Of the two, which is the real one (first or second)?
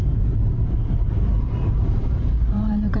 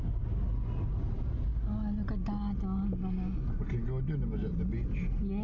second